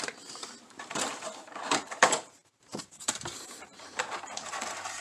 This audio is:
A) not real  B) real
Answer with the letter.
A